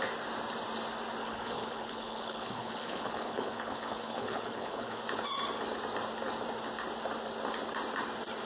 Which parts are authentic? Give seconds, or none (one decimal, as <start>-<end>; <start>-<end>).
0.0-1.2; 5.0-8.4